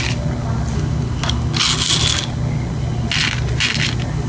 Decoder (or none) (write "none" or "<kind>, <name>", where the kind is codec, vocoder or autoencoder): none